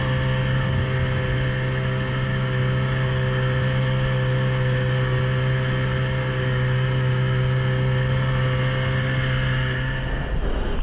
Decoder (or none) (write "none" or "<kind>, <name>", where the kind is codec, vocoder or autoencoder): none